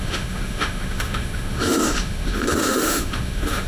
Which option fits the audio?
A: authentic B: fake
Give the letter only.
B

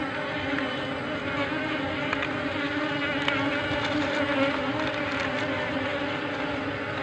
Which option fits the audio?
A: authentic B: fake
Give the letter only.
A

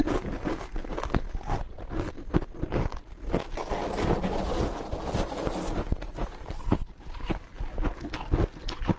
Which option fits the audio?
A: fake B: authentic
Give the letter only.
B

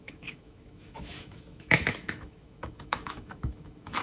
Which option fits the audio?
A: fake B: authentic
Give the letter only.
A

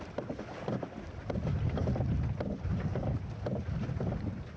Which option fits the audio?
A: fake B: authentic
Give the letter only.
B